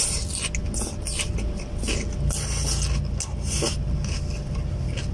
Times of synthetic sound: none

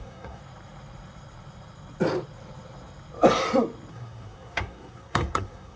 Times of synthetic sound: 0.0-0.4 (codec, SNAC); 3.9-5.8

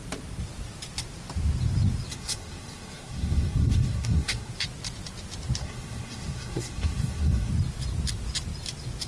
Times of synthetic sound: 2.1-4.5 (codec, SNAC); 5.6-7.5